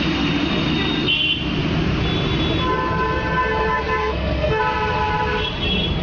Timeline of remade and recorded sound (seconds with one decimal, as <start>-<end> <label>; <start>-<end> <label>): 0.0-4.0 recorded; 4.0-4.6 remade; 4.6-6.0 recorded